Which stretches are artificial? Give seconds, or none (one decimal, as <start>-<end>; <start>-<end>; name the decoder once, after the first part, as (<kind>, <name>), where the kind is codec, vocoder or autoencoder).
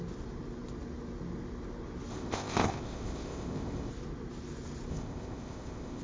2.1-3.9 (codec, ZipCodec); 4.9-6.0